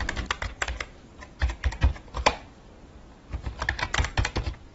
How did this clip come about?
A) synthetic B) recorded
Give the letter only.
B